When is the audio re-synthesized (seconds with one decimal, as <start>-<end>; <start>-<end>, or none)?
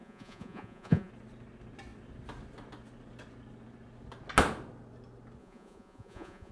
0.0-1.1; 5.4-6.5